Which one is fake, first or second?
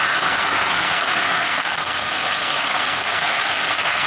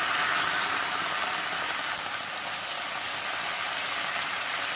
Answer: first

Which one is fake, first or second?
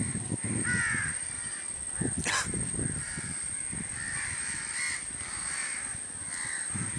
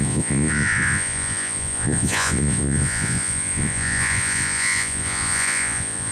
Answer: second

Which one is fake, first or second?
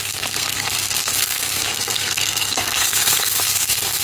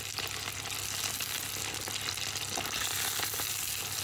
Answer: first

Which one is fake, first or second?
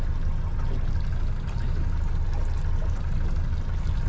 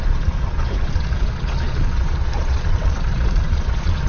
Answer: second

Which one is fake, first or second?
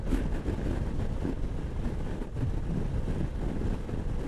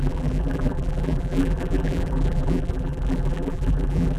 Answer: second